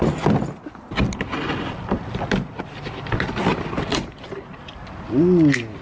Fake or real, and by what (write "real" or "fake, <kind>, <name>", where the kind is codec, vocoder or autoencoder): real